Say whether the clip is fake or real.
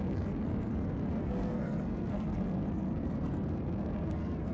fake